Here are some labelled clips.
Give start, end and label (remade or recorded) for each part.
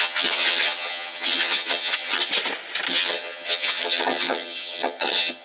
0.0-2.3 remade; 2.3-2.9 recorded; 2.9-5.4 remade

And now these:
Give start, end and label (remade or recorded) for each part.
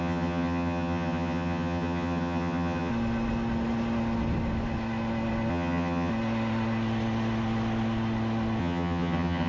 0.0-2.9 remade; 2.9-5.5 recorded; 5.5-6.1 remade; 6.1-8.6 recorded; 8.6-9.5 remade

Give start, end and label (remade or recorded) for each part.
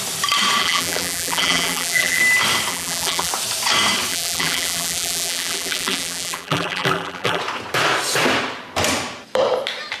0.0-0.6 recorded; 0.6-2.2 remade; 2.2-2.7 recorded; 2.7-3.3 remade; 3.3-4.1 recorded; 4.1-7.4 remade; 7.4-10.0 recorded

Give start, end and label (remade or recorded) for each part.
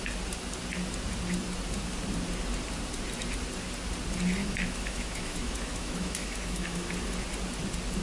0.0-4.4 recorded; 4.4-6.9 remade; 6.9-8.0 recorded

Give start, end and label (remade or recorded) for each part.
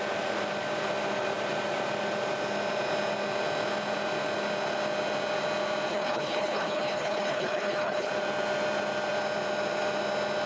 0.0-5.9 recorded; 5.9-8.1 remade; 8.1-10.5 recorded